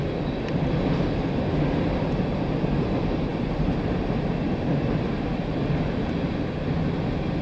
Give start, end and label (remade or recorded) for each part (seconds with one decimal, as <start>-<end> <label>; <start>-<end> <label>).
0.0-7.4 recorded